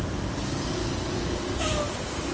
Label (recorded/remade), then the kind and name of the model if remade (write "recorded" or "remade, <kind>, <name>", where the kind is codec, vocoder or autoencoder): recorded